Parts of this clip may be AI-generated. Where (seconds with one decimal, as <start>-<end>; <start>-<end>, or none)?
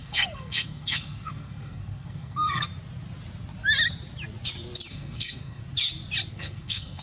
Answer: 0.0-2.7; 4.9-5.6; 6.3-7.0